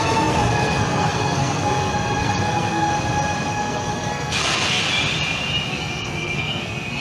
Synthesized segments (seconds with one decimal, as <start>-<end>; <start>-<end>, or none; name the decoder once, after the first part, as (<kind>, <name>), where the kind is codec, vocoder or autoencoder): 0.0-2.9 (codec, SNAC); 3.5-4.8; 5.7-7.0